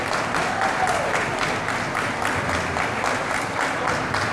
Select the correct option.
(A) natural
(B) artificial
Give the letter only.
A